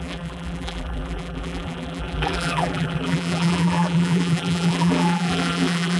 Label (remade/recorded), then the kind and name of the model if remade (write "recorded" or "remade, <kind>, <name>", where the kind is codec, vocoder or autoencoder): remade, vocoder, BigVGAN v2